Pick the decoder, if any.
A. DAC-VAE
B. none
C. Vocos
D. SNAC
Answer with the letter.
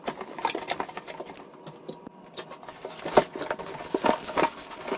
B